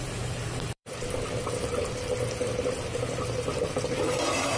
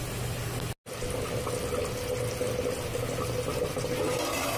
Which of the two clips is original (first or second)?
second